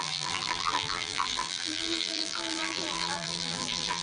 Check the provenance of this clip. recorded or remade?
remade